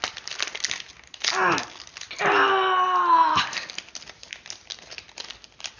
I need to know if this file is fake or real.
real